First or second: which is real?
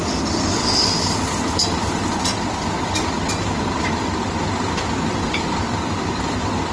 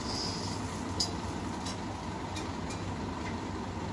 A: second